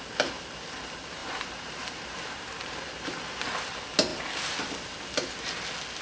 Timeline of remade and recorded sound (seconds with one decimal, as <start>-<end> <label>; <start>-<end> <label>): 0.0-1.2 recorded; 1.2-3.1 remade; 3.1-6.0 recorded